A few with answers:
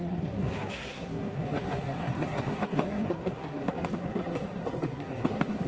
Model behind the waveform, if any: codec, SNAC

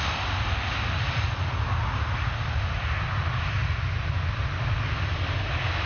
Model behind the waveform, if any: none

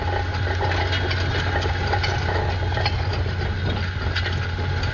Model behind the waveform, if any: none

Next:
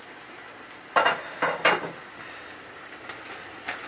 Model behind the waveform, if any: none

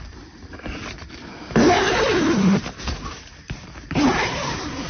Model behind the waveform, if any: vocoder, BigVGAN v2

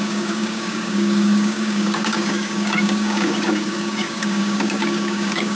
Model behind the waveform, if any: codec, DAC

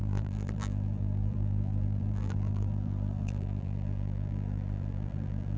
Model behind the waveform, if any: vocoder, BigVGAN v2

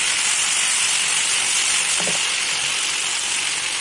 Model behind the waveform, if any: none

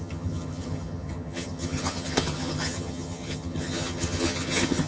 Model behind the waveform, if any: vocoder, HiFi-GAN